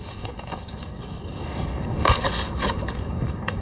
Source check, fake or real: fake